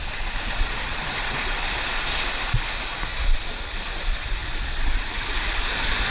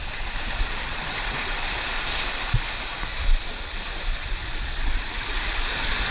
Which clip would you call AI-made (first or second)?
second